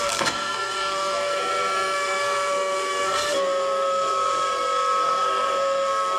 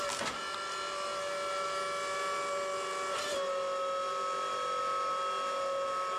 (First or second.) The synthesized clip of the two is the first